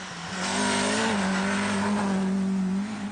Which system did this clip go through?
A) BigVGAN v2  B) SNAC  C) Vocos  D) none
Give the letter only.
D